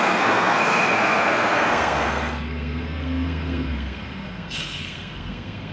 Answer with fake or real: fake